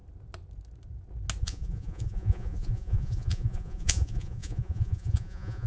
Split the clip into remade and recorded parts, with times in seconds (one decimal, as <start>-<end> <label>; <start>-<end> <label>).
0.0-1.4 recorded; 1.4-5.7 remade